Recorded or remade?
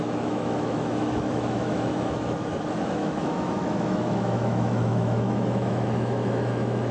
remade